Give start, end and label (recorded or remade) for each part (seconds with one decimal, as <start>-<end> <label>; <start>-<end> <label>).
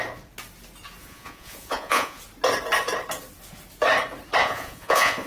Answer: 0.0-1.0 recorded; 1.0-2.2 remade; 2.2-4.4 recorded; 4.4-5.3 remade